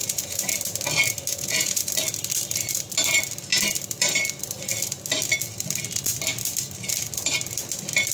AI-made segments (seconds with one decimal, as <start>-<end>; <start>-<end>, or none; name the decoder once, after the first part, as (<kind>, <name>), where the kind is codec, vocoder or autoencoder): 0.0-0.5 (vocoder, Vocos); 1.3-1.9